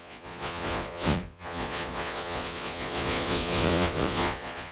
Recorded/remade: remade